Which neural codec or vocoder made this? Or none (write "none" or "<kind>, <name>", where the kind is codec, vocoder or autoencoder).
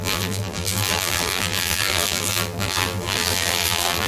vocoder, BigVGAN v2